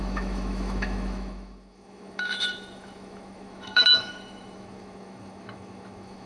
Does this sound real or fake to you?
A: fake